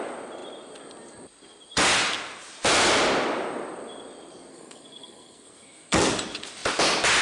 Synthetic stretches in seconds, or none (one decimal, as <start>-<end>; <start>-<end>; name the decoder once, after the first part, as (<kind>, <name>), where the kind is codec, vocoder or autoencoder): 4.5-6.1 (codec, SNAC)